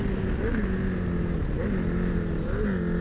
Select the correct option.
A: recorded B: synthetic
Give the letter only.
A